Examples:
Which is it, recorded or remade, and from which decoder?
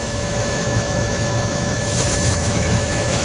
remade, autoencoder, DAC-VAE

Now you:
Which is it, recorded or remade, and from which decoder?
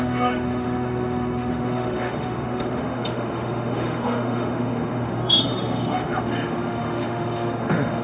remade, autoencoder, DAC-VAE